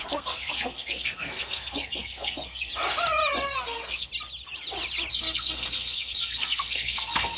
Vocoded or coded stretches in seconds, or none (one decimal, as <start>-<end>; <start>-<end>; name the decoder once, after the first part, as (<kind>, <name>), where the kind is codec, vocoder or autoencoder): 0.0-2.7 (codec, SNAC); 3.5-4.1; 5.1-7.4